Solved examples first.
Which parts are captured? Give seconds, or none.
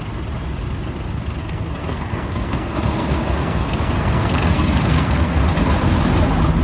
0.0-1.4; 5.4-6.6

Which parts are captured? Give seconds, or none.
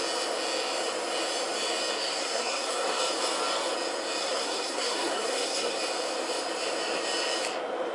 0.0-2.0; 3.0-4.2; 5.8-7.9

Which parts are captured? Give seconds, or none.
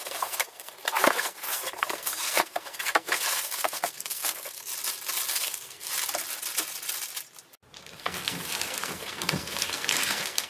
4.7-5.3; 5.9-7.8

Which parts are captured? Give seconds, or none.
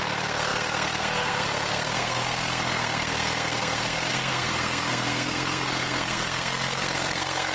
none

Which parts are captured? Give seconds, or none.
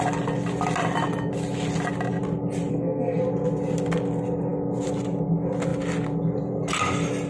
0.0-2.7; 3.2-7.3